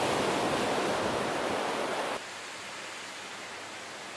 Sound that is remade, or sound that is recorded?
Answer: recorded